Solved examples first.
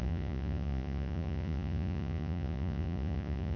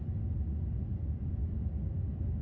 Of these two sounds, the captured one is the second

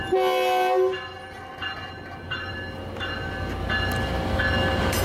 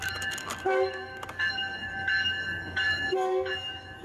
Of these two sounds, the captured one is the first